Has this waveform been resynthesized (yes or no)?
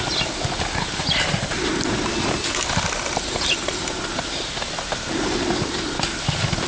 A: no